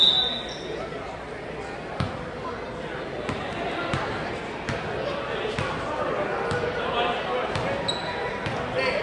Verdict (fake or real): real